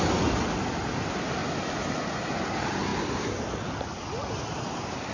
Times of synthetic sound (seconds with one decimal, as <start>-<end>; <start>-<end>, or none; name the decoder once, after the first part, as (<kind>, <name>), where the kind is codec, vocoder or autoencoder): none